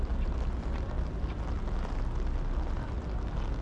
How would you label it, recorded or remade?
recorded